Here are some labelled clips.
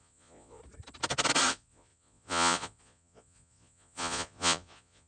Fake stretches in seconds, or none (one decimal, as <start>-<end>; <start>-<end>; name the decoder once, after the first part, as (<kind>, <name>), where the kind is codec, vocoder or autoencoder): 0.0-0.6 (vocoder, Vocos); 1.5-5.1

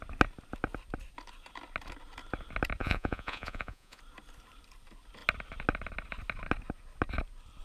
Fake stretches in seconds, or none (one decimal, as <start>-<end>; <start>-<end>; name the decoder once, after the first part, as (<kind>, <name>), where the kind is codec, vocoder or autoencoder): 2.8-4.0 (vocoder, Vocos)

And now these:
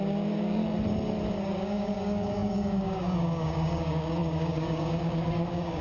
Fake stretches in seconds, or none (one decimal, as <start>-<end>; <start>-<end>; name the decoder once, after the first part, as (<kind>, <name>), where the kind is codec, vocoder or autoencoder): 0.0-0.6 (codec, DAC); 1.3-5.8